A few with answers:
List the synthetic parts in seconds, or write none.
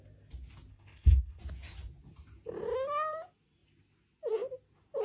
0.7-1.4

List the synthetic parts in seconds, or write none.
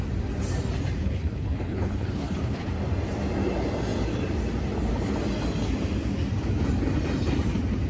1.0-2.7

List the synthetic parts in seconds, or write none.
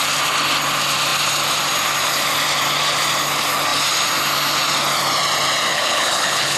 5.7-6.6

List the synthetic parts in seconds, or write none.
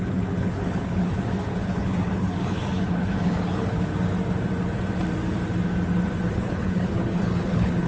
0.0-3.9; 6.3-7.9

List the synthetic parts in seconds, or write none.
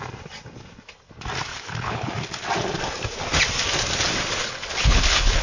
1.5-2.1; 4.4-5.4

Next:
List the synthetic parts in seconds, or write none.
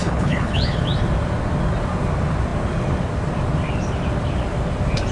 0.0-0.8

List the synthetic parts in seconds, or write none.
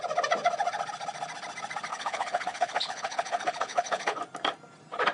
1.9-4.2